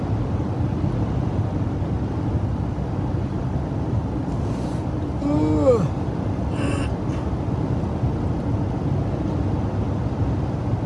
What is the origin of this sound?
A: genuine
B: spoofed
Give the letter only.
A